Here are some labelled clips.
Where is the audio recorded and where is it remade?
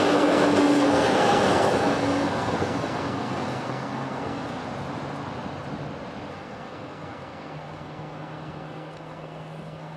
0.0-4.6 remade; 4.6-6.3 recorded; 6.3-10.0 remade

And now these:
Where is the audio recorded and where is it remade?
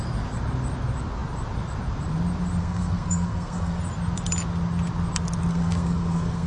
0.0-2.6 recorded; 2.6-3.8 remade; 3.8-5.5 recorded; 5.5-6.5 remade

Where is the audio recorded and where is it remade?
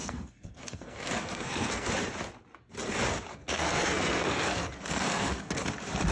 0.0-1.9 remade; 1.9-3.3 recorded; 3.3-5.5 remade; 5.5-6.1 recorded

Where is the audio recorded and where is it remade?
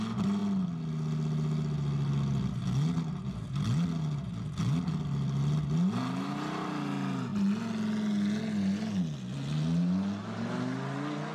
0.0-11.3 recorded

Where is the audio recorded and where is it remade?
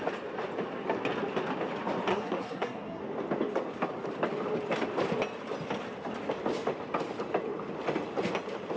0.0-2.1 recorded; 2.1-3.0 remade; 3.0-8.8 recorded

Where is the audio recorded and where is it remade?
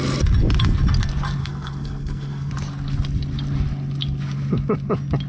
0.0-1.4 recorded; 1.4-2.5 remade; 2.5-5.3 recorded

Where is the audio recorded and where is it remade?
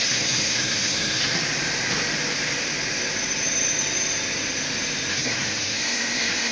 0.0-1.2 remade; 1.2-5.1 recorded; 5.1-6.5 remade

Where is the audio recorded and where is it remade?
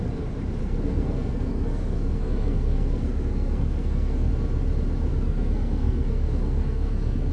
0.0-0.6 recorded; 0.6-4.3 remade; 4.3-5.1 recorded; 5.1-7.3 remade